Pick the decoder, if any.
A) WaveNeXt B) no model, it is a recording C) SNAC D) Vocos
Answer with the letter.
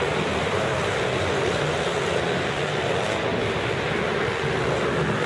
B